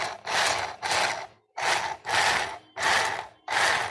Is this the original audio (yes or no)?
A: yes